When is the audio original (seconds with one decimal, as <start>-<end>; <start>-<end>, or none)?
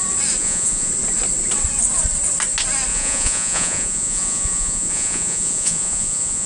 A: 0.0-0.4; 0.9-2.9